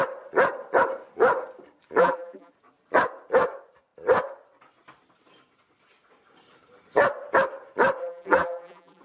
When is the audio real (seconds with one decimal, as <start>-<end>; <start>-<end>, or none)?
0.0-2.0; 2.5-8.0